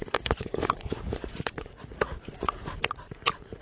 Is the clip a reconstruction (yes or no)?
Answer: yes